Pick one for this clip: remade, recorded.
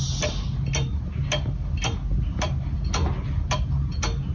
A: recorded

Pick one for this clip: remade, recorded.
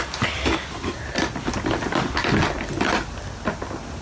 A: recorded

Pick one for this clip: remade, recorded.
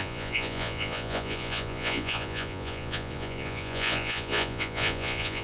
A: remade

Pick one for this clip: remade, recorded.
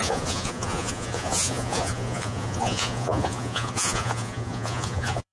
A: remade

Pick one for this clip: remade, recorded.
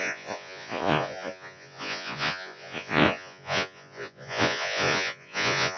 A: remade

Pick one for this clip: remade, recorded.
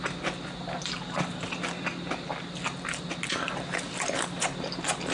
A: recorded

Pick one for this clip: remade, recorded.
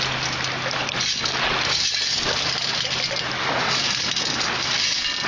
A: recorded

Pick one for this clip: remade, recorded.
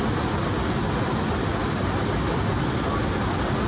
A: recorded